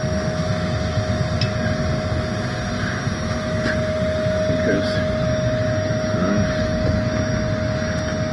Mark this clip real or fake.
real